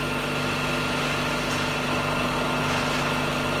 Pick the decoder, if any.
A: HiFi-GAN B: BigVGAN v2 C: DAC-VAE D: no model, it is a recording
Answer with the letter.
D